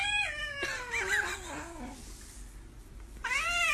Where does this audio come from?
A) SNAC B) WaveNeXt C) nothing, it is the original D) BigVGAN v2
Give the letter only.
C